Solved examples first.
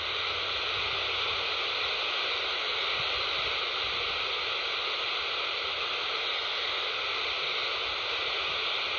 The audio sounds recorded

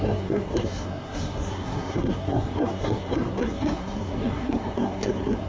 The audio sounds remade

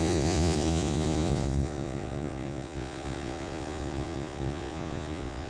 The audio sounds remade